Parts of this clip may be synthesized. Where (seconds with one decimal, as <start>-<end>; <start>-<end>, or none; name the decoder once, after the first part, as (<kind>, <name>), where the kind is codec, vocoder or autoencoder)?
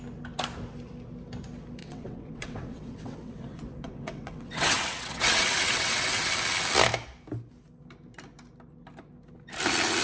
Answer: 1.8-6.3 (vocoder, WaveNeXt)